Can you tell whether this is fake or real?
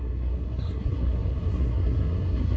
fake